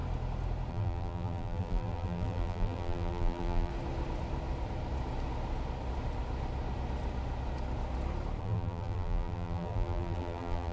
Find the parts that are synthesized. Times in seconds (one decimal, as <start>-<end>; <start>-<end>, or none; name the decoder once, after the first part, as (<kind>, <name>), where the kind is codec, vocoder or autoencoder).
0.7-3.7 (vocoder, BigVGAN v2); 8.4-10.7